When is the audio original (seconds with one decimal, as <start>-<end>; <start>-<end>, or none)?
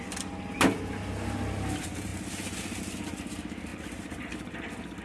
0.0-5.0